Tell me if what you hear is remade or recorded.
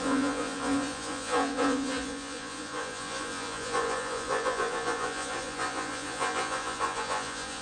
remade